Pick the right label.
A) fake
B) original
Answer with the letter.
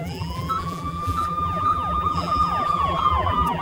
A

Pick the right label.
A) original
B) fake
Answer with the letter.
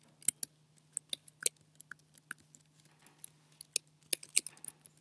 A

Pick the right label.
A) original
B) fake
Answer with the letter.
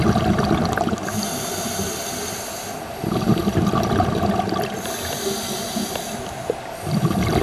A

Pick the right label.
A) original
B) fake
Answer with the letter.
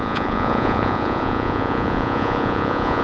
B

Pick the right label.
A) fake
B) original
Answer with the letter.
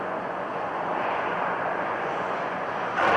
A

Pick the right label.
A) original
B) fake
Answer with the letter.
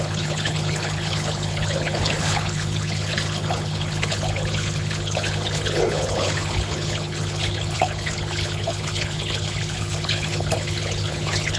B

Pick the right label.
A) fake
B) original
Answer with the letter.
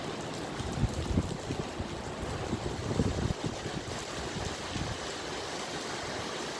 B